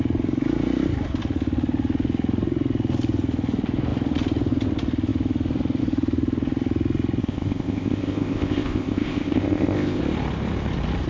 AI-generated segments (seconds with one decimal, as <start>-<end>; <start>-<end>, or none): 7.2-10.0